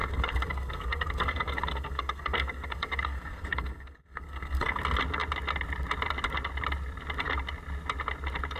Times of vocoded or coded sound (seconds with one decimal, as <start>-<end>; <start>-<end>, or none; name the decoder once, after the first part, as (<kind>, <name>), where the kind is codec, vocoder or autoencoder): 0.0-4.8 (codec, SNAC)